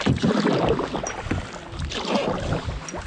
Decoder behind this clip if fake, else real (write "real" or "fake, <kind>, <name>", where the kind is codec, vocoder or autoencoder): real